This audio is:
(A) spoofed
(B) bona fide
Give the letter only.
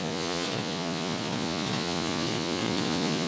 A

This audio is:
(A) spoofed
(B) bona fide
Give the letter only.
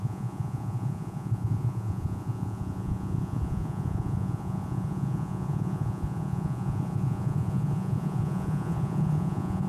A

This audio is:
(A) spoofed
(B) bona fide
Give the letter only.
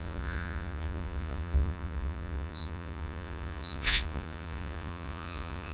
A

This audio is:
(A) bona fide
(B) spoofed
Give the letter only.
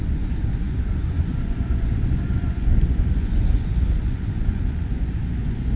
B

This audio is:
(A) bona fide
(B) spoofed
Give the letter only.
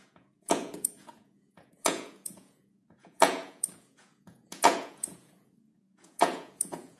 B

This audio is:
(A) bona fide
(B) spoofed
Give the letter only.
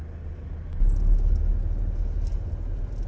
A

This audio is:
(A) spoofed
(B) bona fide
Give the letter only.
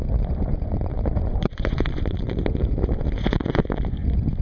A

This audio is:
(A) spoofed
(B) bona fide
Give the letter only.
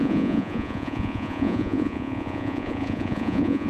A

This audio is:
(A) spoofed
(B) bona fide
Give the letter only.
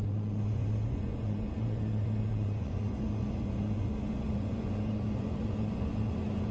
A